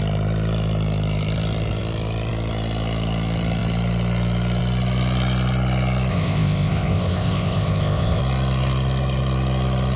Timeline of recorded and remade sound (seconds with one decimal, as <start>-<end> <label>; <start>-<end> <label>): 0.0-6.1 recorded; 6.1-8.2 remade; 8.2-10.0 recorded